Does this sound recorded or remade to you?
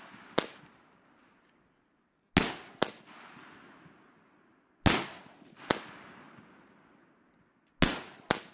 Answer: recorded